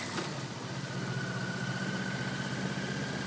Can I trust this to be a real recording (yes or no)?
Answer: yes